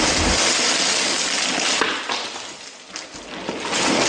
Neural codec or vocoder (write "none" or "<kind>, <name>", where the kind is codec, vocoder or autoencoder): none